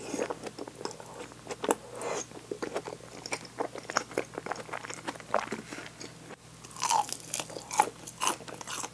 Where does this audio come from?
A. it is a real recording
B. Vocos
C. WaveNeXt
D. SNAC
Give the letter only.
A